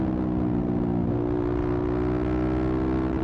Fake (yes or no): no